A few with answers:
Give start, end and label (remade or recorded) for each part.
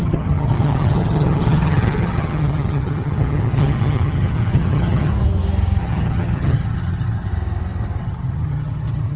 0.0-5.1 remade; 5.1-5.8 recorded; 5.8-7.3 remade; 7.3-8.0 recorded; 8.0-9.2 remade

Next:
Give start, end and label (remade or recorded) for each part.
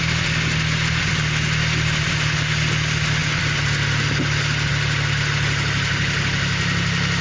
0.0-7.2 recorded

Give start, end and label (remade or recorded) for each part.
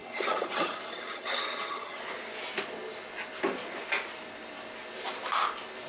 0.0-2.0 remade; 2.0-5.9 recorded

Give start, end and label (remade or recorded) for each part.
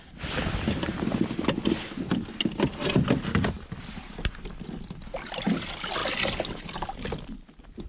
0.0-7.9 recorded